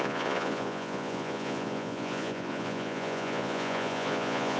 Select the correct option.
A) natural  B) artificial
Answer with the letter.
B